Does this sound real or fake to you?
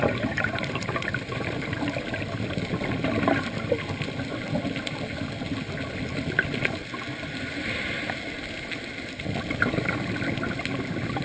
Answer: real